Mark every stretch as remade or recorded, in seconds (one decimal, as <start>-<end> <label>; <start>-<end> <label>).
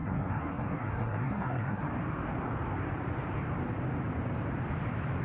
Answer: 0.0-1.9 remade; 1.9-5.2 recorded